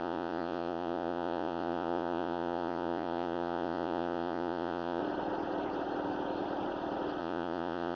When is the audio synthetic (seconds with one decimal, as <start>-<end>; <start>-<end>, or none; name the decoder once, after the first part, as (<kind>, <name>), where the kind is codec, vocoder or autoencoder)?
0.0-5.0 (vocoder, Vocos); 7.2-8.0